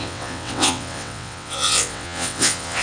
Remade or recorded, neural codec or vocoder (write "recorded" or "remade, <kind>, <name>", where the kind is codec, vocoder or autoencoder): remade, vocoder, WaveNeXt